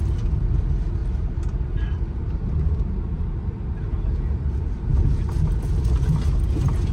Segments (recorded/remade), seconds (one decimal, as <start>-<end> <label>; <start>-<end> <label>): 0.0-1.0 recorded; 1.0-2.7 remade; 2.7-6.9 recorded